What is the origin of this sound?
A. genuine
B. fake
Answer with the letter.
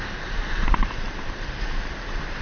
B